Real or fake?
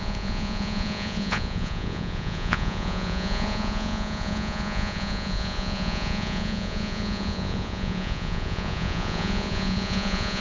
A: fake